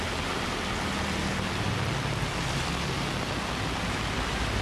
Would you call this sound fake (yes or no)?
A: no